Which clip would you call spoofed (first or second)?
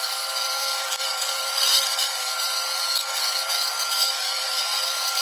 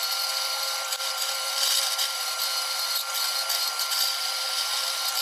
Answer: first